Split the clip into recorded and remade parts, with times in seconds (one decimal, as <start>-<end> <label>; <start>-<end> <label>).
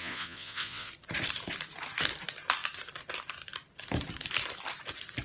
0.0-0.9 remade; 0.9-5.2 recorded